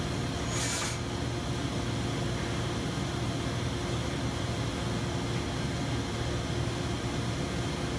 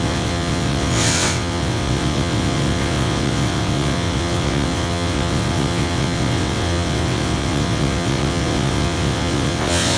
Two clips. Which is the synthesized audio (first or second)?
second